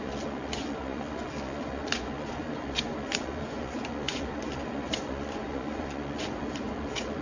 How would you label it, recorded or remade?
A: remade